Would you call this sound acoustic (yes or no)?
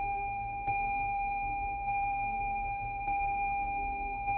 no